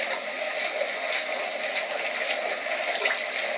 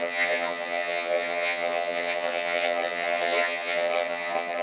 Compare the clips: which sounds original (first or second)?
first